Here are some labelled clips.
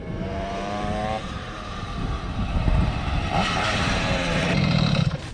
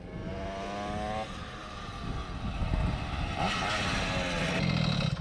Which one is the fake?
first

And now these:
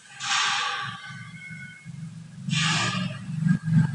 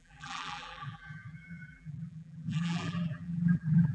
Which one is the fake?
second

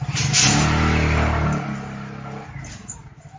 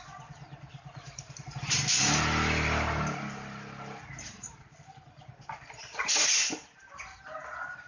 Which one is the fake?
second